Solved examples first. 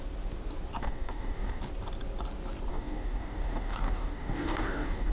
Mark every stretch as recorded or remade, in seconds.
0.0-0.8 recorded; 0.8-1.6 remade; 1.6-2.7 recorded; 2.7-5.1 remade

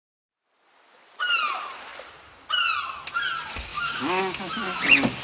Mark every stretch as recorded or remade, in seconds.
0.0-3.7 recorded; 3.7-4.2 remade; 4.2-5.2 recorded